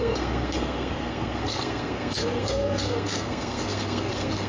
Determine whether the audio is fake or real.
fake